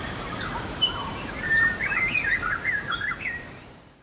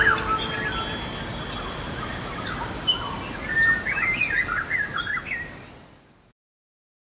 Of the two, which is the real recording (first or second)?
second